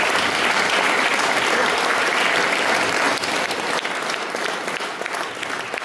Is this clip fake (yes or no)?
yes